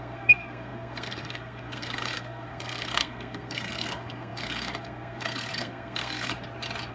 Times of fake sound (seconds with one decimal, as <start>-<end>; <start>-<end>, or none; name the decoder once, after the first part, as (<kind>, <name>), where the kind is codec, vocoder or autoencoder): 0.0-6.3 (codec, SNAC)